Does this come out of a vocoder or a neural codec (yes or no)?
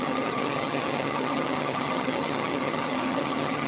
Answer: yes